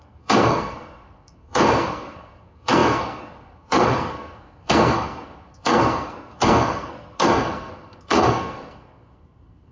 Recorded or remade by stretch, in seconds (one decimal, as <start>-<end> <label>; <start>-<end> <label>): 0.0-9.7 remade